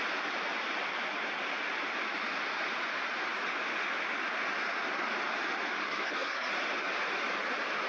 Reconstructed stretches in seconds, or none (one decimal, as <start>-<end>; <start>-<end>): 5.8-6.5